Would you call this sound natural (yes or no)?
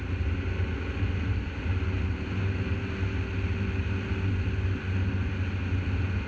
yes